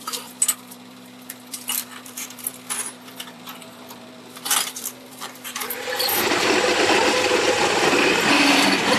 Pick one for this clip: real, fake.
fake